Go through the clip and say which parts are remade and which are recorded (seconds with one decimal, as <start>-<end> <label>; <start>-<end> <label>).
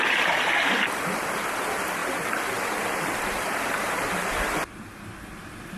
0.0-5.8 recorded